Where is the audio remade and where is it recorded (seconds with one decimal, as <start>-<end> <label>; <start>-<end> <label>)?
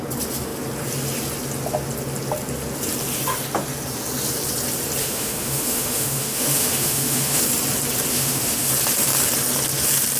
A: 0.0-5.0 recorded; 5.0-7.4 remade; 7.4-8.1 recorded; 8.1-8.7 remade; 8.7-10.2 recorded